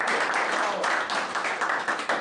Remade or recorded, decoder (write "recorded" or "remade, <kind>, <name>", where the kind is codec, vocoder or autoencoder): recorded